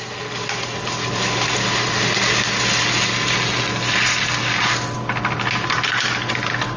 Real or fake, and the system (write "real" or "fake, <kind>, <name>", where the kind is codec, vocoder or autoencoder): real